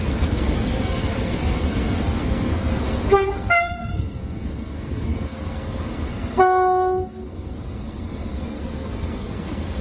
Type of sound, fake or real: fake